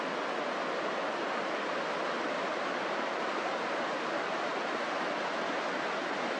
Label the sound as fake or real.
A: real